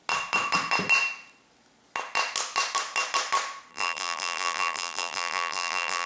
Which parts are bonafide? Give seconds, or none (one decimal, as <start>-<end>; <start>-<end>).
0.0-3.7